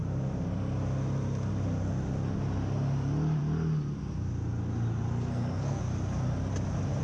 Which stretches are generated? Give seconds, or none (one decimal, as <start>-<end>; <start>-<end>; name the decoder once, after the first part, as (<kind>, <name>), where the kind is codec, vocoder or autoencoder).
5.1-5.8 (codec, SNAC)